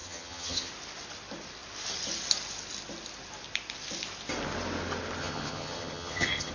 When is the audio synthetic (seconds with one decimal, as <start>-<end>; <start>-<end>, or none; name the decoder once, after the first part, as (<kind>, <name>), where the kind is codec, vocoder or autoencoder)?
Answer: 0.0-0.7 (vocoder, HiFi-GAN); 5.2-6.5